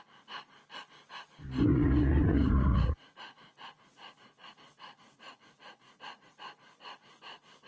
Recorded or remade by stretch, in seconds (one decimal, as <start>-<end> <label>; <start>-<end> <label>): 0.0-1.7 recorded; 1.7-6.3 remade; 6.3-7.7 recorded